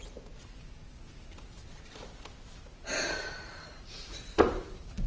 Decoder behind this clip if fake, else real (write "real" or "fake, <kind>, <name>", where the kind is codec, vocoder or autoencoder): real